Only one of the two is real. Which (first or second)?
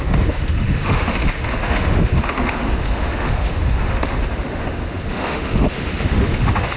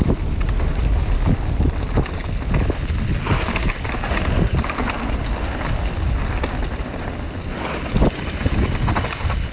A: second